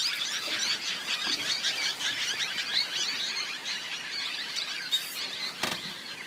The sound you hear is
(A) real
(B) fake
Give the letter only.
A